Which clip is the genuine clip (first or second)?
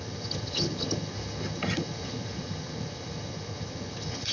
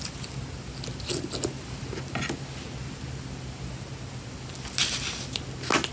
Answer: second